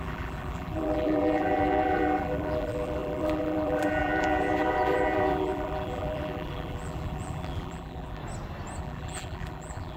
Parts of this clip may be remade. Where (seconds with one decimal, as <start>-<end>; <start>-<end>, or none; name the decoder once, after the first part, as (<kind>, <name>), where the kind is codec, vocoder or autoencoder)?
0.0-8.2 (vocoder, BigVGAN v2); 8.8-10.0